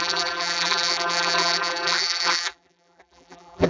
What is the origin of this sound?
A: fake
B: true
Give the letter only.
A